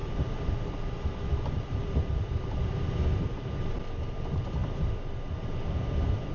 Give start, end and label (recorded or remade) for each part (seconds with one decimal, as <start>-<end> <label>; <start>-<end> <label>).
0.0-3.8 remade; 3.8-4.6 recorded; 4.6-5.3 remade; 5.3-6.3 recorded